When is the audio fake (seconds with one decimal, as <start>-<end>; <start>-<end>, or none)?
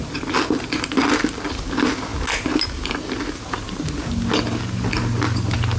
none